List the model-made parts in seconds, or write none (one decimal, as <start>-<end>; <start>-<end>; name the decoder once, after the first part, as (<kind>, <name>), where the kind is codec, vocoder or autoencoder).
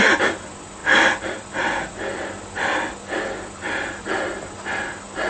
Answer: none